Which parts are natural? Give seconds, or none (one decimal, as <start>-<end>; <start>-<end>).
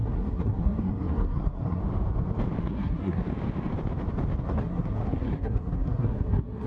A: 1.8-2.6; 3.2-4.4